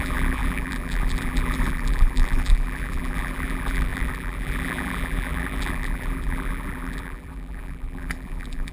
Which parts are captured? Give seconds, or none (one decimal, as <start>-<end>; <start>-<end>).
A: none